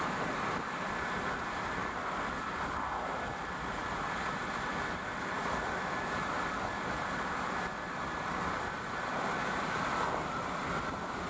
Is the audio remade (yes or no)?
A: no